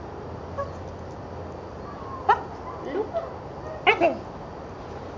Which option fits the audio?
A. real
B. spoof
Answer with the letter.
A